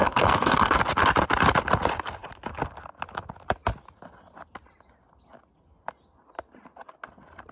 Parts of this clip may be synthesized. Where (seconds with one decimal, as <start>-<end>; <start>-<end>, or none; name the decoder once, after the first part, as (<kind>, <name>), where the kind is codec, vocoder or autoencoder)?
0.0-0.8 (codec, SNAC)